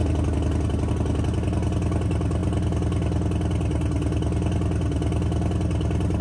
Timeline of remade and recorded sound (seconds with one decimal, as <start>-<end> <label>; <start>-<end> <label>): 0.0-6.2 recorded